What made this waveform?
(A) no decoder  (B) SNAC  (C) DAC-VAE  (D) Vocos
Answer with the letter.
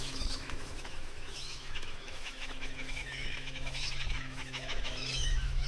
C